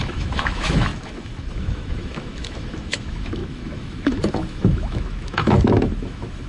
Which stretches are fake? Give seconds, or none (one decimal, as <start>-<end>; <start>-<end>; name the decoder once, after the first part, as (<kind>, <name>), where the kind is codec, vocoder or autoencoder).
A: 0.0-6.5 (autoencoder, DAC-VAE)